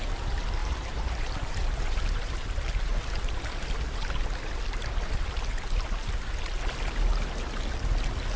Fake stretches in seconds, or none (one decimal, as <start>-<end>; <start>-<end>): 0.6-2.6